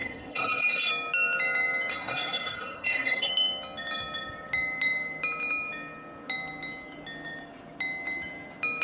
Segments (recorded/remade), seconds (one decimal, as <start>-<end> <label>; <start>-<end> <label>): 0.0-0.9 remade; 0.9-1.9 recorded; 1.9-3.3 remade; 3.3-8.8 recorded